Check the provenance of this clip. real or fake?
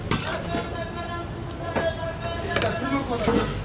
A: real